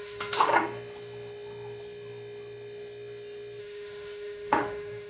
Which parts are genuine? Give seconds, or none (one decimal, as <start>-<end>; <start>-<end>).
0.5-3.6